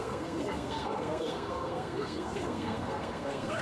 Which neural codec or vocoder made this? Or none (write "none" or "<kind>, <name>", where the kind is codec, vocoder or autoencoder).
codec, SNAC